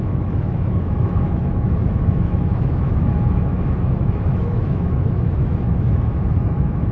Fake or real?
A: fake